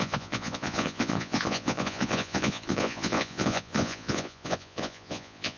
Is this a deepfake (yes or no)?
yes